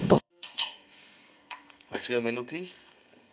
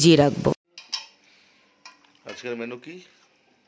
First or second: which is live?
second